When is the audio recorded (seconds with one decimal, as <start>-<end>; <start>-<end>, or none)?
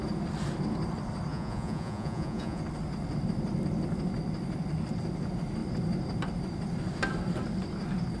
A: 0.0-1.3; 2.6-8.2